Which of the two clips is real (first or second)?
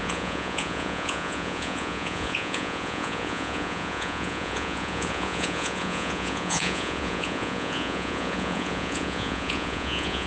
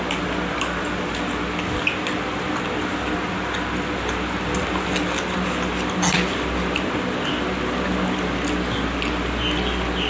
second